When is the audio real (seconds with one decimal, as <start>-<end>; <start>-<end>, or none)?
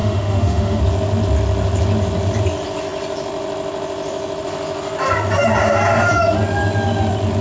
0.8-7.4